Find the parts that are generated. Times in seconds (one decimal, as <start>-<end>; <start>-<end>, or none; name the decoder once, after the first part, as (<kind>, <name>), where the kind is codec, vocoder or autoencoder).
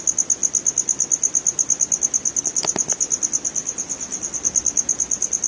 none